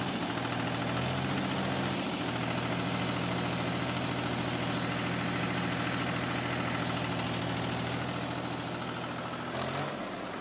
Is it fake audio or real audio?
real